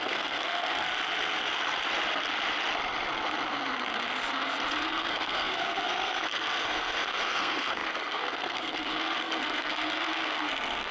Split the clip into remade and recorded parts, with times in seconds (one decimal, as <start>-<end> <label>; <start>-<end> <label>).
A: 0.0-0.9 remade; 0.9-4.8 recorded; 4.8-10.9 remade